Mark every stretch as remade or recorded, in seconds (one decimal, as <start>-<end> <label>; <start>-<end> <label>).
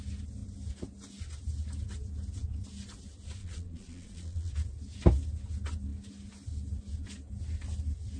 0.0-3.4 recorded; 3.4-4.5 remade; 4.5-8.2 recorded